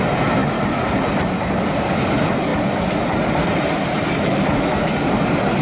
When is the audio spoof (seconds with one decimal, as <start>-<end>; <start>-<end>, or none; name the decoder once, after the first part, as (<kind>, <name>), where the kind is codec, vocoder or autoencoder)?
none